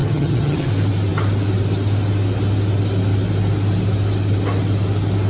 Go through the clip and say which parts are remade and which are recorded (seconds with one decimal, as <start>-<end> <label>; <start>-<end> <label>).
0.0-0.7 remade; 0.7-5.3 recorded